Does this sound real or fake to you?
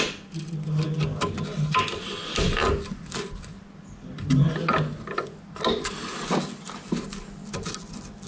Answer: real